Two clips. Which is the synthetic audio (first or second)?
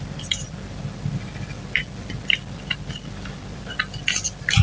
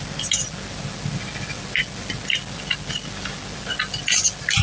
first